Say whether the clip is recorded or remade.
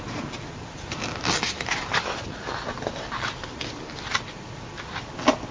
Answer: recorded